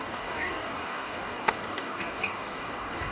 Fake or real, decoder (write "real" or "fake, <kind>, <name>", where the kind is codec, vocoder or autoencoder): fake, codec, DAC